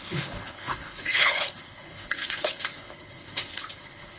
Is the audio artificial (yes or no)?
yes